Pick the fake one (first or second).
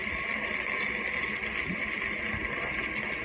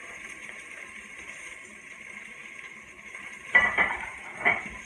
second